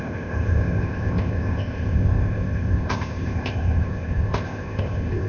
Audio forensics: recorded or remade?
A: remade